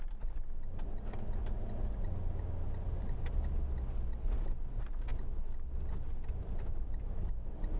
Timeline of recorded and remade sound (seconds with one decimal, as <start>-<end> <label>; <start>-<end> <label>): 0.0-7.8 recorded

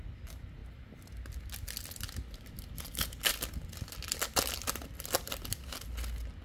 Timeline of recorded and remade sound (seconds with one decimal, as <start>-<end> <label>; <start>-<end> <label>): 0.0-6.4 recorded

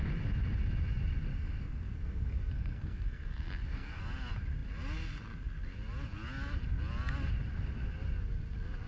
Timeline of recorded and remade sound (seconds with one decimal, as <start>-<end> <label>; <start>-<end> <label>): 0.0-1.3 recorded; 1.3-4.0 remade; 4.0-8.9 recorded

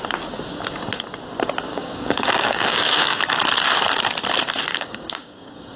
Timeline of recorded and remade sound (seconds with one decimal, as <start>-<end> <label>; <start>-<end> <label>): 0.0-1.7 recorded; 1.7-3.2 remade; 3.2-4.7 recorded; 4.7-5.8 remade

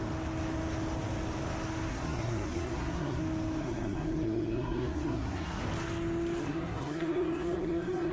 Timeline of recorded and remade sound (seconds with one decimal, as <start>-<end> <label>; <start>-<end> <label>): 0.0-1.9 recorded; 1.9-3.2 remade; 3.2-3.6 recorded; 3.6-5.6 remade; 5.6-6.4 recorded; 6.4-8.1 remade